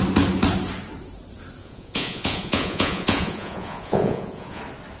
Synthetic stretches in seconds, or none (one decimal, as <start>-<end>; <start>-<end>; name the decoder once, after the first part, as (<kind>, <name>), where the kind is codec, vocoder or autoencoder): 1.6-4.6 (vocoder, Vocos)